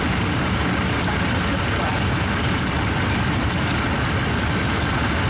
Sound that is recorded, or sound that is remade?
recorded